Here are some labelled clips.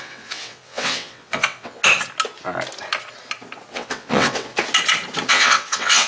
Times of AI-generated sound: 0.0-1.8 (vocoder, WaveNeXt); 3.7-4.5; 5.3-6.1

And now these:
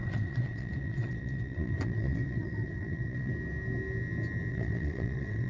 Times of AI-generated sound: 0.0-3.3 (vocoder, WaveNeXt); 4.5-5.5

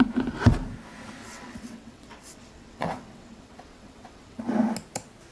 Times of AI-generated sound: 1.2-4.4 (vocoder, WaveNeXt)

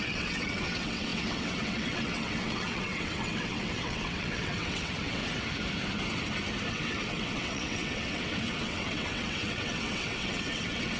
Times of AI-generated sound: 0.0-5.2 (vocoder, WaveNeXt); 6.7-11.0

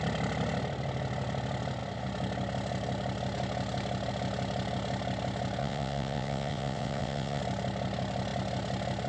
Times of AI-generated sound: 5.6-7.4 (vocoder, WaveNeXt)